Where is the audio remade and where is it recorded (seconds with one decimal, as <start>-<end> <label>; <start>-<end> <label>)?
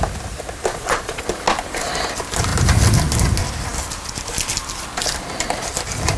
0.0-0.7 recorded; 0.7-1.2 remade; 1.2-6.2 recorded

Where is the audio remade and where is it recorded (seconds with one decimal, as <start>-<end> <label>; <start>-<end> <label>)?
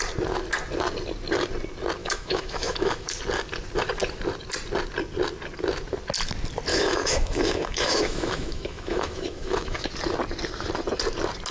0.0-2.0 recorded; 2.0-3.2 remade; 3.2-6.7 recorded; 6.7-9.9 remade; 9.9-11.5 recorded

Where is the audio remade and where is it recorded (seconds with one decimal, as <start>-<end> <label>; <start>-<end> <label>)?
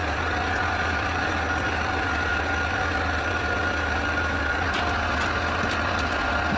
0.0-4.0 remade; 4.0-6.6 recorded